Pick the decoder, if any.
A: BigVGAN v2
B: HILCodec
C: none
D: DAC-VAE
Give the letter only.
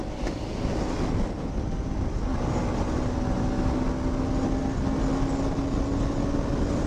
C